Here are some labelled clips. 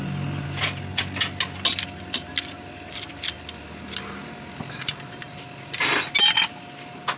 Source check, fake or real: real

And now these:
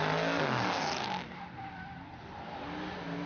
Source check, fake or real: real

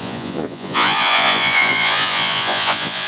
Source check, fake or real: fake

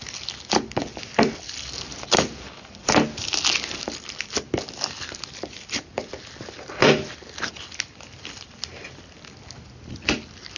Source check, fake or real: real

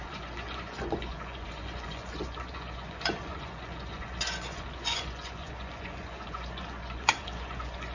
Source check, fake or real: fake